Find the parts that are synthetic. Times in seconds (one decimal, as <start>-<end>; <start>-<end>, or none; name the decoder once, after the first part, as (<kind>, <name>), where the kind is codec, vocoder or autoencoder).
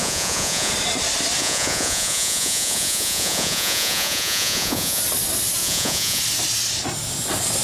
0.0-0.7 (vocoder, Vocos); 1.4-5.0; 5.6-6.2